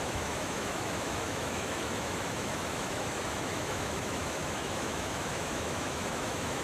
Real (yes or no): no